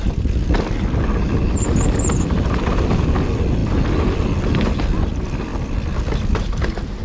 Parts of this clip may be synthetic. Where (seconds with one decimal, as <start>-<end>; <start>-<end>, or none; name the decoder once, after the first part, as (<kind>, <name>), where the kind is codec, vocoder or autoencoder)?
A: none